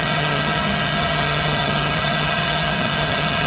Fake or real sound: fake